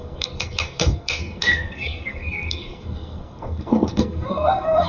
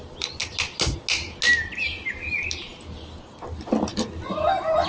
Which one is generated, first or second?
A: first